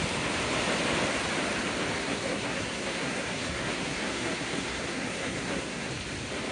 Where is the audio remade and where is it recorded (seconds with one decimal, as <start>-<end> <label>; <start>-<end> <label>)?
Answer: 0.0-2.0 recorded; 2.0-5.9 remade; 5.9-6.5 recorded